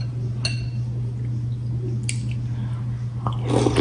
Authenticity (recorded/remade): recorded